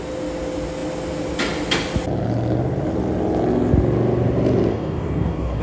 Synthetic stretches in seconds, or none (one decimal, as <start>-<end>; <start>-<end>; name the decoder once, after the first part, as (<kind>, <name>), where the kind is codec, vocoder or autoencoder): 4.7-5.6 (codec, DAC)